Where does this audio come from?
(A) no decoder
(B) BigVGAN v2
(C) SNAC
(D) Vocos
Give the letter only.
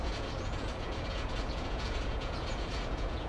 D